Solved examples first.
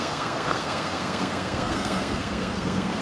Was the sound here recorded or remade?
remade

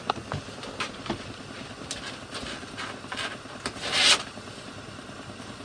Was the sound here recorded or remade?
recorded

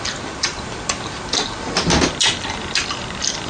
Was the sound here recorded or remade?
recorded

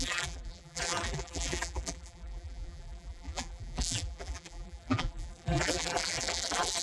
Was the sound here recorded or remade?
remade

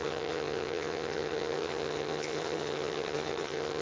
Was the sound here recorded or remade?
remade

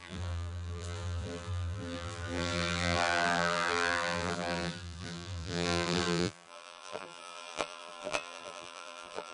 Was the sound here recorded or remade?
remade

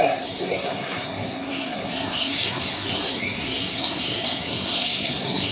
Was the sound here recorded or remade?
remade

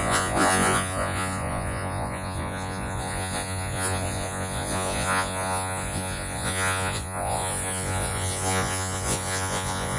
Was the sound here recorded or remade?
remade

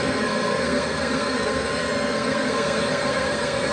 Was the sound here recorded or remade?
remade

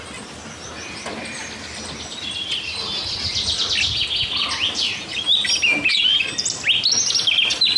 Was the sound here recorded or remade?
recorded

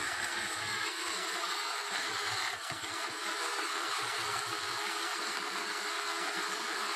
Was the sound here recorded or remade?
remade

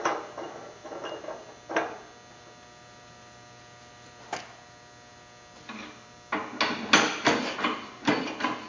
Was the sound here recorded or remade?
recorded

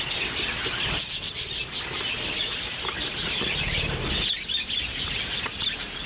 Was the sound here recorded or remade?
recorded